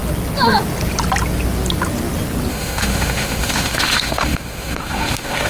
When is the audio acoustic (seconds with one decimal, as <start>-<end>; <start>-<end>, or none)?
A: 0.0-2.5